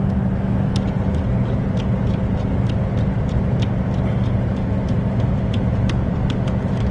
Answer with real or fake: real